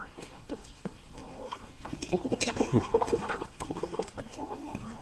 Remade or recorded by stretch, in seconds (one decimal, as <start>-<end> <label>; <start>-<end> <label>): 0.0-5.0 remade